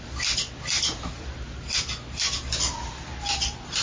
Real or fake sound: real